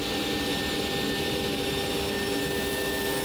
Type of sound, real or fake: real